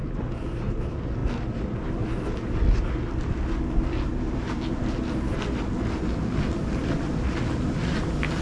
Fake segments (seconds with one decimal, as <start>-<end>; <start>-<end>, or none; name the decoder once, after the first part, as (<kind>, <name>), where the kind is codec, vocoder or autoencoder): none